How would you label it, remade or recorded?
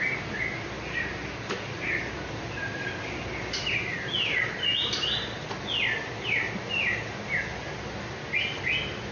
recorded